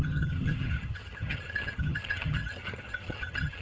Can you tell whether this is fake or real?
fake